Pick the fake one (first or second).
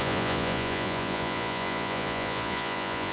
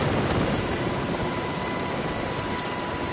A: first